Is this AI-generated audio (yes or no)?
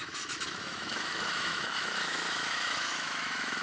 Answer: yes